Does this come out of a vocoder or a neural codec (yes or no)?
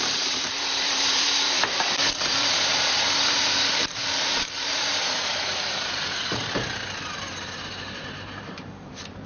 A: yes